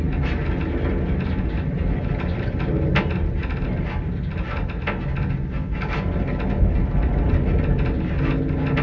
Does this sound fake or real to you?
real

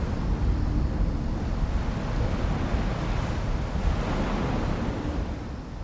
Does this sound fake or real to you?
real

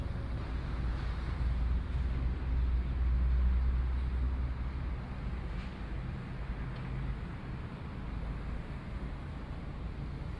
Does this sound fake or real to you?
real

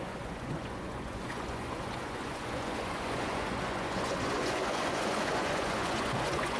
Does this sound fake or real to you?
fake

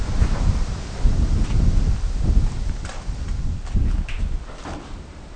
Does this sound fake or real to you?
real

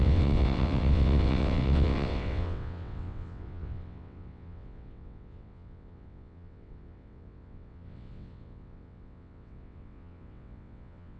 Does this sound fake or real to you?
fake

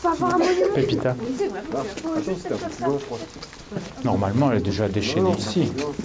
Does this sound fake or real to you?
real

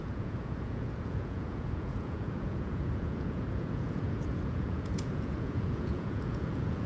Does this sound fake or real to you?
fake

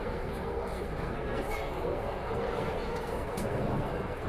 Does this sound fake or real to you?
fake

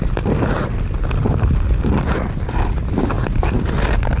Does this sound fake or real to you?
real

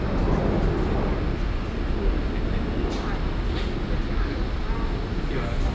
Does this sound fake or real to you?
real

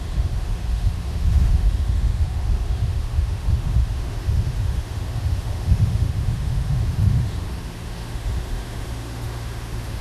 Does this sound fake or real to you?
fake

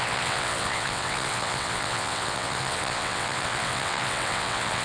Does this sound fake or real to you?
fake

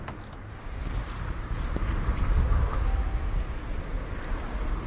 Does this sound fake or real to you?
real